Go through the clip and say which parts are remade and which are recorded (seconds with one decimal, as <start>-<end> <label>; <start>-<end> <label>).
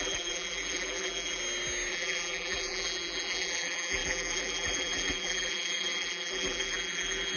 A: 0.0-1.4 remade; 1.4-1.9 recorded; 1.9-7.4 remade